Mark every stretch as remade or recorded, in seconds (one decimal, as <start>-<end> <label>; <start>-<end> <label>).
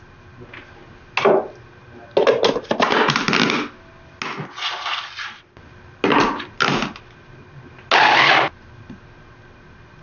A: 0.0-10.0 recorded